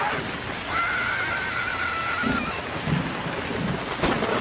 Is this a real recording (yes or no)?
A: yes